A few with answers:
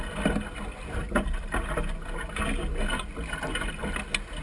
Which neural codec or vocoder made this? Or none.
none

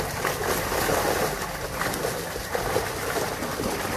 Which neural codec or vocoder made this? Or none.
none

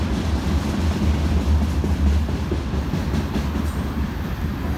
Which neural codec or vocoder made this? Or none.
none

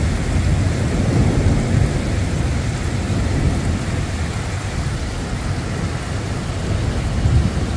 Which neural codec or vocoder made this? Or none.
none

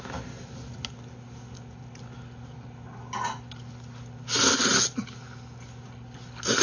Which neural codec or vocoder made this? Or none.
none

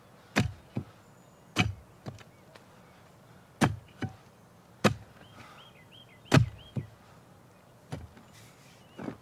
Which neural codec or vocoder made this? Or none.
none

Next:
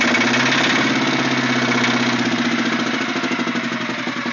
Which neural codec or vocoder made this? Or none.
none